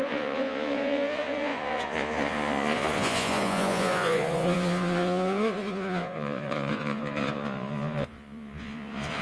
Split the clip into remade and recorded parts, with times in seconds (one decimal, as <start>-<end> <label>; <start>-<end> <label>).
0.0-9.2 remade